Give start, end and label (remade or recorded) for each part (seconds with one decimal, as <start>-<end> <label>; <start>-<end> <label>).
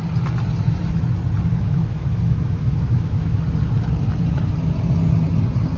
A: 0.0-1.5 recorded; 1.5-3.4 remade; 3.4-5.8 recorded